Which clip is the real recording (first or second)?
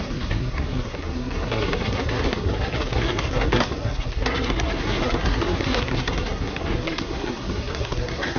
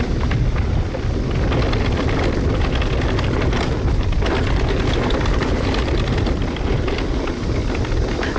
second